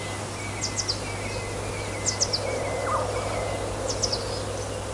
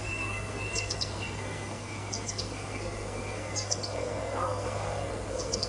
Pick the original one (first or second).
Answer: first